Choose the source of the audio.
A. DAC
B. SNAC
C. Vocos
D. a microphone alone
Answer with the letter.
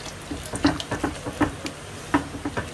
D